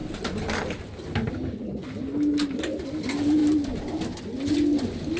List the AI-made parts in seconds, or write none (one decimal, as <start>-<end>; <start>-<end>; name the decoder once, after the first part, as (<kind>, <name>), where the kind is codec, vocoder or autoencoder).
none